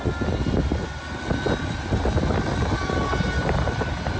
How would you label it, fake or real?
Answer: real